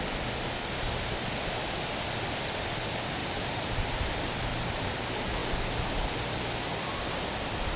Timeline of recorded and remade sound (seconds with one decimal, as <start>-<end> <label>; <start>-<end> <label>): 0.0-3.2 recorded; 3.2-3.7 remade; 3.7-4.5 recorded; 4.5-5.0 remade; 5.0-7.8 recorded